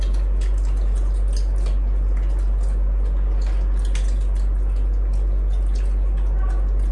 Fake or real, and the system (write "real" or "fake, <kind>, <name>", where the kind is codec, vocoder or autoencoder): real